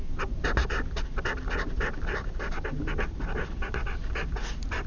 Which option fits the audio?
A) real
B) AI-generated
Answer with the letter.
A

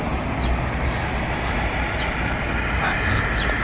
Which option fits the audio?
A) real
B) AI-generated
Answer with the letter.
A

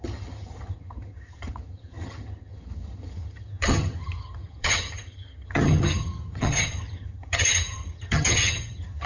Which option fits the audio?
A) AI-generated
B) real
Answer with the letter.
A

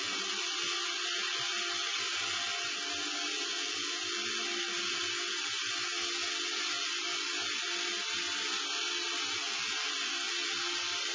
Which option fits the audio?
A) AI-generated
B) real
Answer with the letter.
B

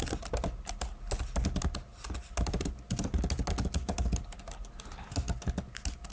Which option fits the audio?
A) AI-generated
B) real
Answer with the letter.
B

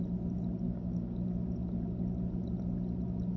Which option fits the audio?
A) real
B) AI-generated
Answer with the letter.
A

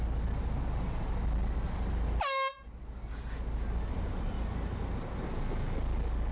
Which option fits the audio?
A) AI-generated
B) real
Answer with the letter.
B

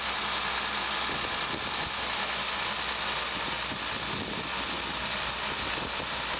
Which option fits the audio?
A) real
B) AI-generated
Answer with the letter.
A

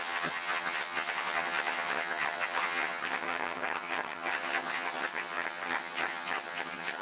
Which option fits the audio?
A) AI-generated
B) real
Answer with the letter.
A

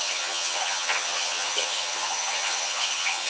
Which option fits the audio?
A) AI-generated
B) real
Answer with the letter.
A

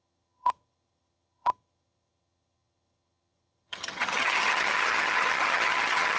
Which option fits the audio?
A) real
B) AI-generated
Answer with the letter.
B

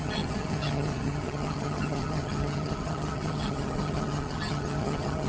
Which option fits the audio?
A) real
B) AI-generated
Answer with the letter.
B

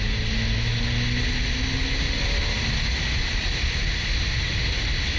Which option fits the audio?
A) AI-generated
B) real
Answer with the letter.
B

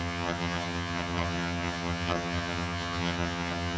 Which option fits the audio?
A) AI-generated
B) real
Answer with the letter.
A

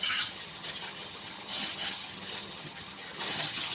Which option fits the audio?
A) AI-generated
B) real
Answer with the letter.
A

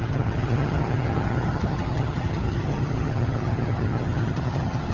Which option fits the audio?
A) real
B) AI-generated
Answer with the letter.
B